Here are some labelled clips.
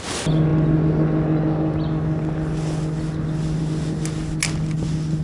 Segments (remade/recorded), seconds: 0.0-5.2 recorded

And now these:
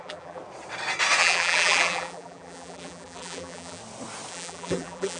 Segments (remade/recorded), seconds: 0.0-0.4 remade; 0.4-1.2 recorded; 1.2-3.8 remade; 3.8-4.3 recorded; 4.3-5.2 remade

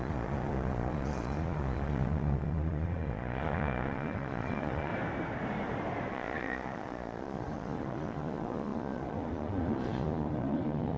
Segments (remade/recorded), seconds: 0.0-4.9 remade; 4.9-6.1 recorded; 6.1-11.0 remade

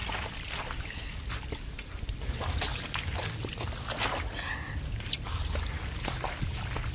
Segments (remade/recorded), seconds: 0.0-6.9 recorded

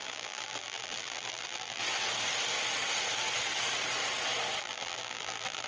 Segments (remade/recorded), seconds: 0.0-1.8 remade; 1.8-4.6 recorded; 4.6-5.7 remade

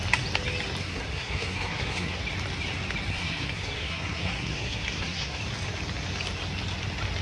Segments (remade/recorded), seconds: 0.0-0.8 recorded; 0.8-2.2 remade; 2.2-3.1 recorded; 3.1-5.4 remade; 5.4-7.2 recorded

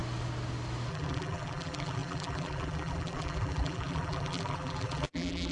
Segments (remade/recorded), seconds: 0.0-0.9 recorded; 0.9-5.5 remade